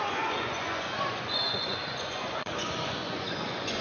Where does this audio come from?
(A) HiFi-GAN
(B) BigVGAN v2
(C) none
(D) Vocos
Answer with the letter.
D